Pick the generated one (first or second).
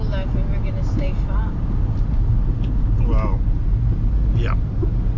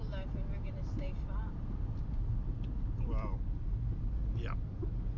second